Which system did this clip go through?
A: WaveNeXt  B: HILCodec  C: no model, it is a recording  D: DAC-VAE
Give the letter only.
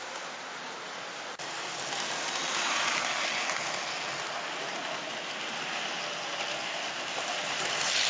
C